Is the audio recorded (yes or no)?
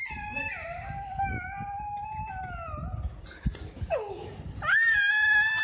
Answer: yes